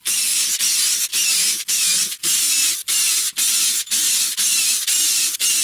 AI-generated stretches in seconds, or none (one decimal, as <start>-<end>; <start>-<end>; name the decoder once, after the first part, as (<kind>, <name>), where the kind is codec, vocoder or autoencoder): none

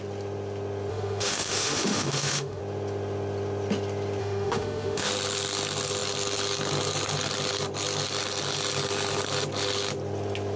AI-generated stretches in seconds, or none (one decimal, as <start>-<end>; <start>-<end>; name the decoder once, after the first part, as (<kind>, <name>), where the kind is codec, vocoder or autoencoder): 0.9-2.6 (autoencoder, DAC-VAE); 4.2-5.1

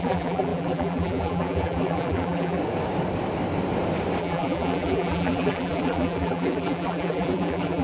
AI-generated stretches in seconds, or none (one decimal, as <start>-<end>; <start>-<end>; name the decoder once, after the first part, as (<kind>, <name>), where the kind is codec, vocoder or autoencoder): 0.0-2.6 (vocoder, BigVGAN v2); 4.2-7.8

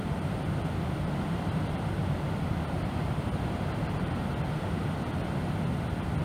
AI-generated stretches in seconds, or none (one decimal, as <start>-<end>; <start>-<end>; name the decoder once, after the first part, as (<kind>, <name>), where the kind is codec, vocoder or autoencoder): 0.0-5.1 (vocoder, BigVGAN v2)

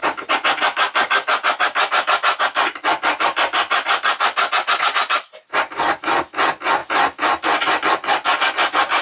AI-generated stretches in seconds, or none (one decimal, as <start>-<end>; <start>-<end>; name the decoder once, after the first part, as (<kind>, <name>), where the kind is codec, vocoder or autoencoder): none

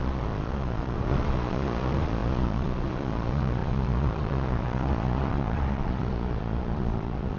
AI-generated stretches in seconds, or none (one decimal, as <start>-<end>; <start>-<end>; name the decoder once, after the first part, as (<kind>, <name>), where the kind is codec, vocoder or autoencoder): 0.0-7.4 (vocoder, Vocos)

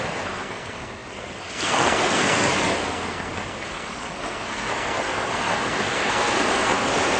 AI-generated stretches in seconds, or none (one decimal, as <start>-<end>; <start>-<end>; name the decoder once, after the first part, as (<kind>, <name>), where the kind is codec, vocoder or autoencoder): 0.0-7.2 (codec, SNAC)

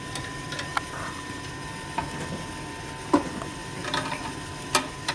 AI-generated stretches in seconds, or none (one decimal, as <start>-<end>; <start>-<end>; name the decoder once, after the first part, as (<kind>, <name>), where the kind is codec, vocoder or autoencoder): 0.7-1.7 (vocoder, BigVGAN v2); 3.6-5.1